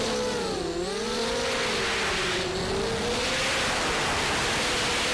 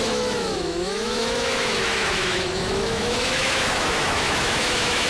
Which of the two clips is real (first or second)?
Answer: first